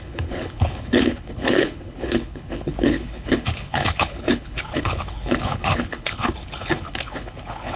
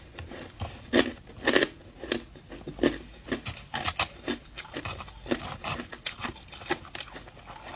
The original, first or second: second